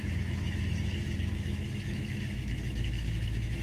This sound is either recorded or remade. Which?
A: remade